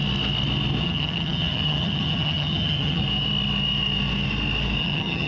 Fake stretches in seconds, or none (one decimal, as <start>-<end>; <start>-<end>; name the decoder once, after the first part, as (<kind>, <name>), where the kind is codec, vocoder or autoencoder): 0.8-3.0 (vocoder, HiFi-GAN); 4.8-5.3